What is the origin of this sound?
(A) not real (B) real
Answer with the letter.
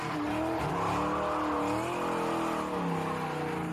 B